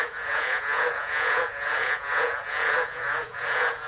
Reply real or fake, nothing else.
fake